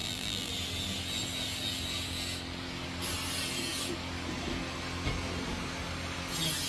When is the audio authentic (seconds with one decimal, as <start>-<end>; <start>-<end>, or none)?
0.5-6.7